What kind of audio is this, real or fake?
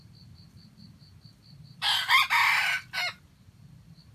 real